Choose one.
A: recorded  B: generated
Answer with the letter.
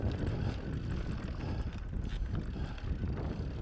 A